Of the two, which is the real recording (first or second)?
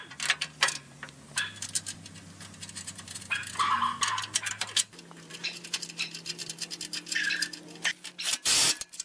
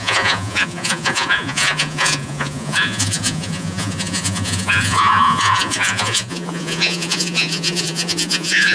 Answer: first